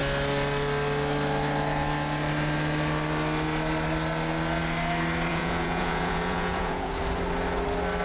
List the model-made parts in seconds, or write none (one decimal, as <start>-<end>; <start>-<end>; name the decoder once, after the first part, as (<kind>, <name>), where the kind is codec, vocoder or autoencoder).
5.3-6.9 (vocoder, Vocos)